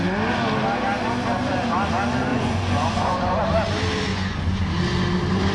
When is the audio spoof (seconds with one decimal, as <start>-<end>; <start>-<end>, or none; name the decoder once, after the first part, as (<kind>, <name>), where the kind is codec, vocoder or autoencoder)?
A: 2.3-3.4 (vocoder, Vocos); 4.1-4.6